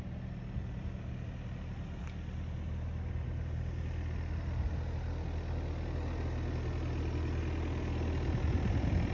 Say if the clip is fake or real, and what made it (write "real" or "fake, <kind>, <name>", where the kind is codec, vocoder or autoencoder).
real